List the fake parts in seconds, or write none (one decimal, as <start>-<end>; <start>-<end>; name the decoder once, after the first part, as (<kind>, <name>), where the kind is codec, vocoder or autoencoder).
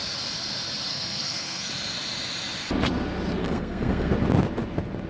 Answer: 0.9-1.7 (codec, SNAC); 3.4-4.1